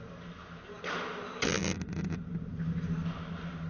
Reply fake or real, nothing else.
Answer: real